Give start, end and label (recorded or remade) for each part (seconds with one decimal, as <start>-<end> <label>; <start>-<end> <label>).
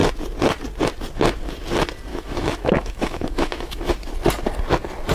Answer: 0.0-2.1 recorded; 2.1-3.9 remade; 3.9-5.1 recorded